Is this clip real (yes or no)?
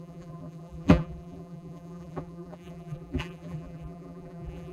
no